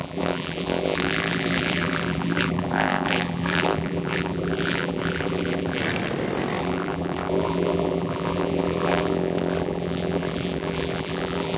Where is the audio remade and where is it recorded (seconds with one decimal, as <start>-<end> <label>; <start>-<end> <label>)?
0.0-5.8 remade; 5.8-6.6 recorded; 6.6-11.6 remade